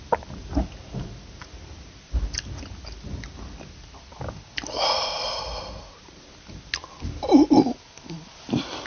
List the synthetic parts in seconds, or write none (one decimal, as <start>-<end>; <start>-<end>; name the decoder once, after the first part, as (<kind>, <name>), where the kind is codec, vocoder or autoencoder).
none